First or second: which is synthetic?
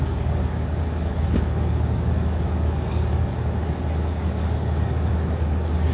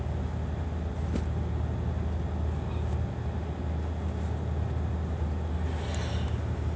first